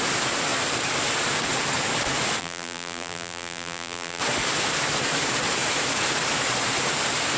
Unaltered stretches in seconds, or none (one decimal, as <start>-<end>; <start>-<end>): 0.0-2.4; 4.2-7.4